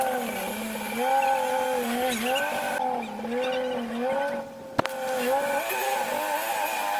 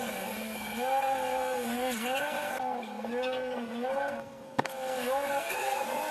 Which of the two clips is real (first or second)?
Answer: first